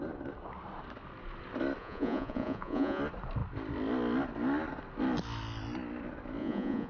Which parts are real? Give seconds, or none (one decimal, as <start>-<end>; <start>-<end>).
0.0-1.8; 3.0-6.4